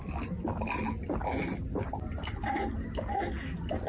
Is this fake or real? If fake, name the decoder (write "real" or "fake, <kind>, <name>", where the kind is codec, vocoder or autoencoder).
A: real